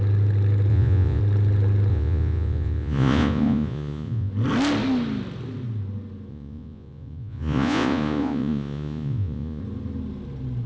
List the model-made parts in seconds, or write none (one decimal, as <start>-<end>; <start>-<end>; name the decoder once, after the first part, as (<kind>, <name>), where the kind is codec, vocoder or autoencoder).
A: 0.7-1.2 (vocoder, Vocos); 1.9-4.3; 6.3-9.6